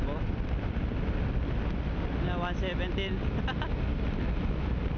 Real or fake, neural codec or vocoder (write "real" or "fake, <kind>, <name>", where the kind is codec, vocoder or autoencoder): real